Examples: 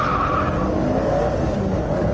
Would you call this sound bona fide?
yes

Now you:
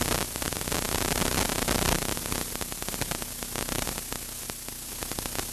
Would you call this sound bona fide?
yes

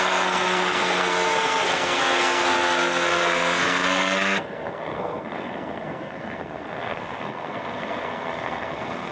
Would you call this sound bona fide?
no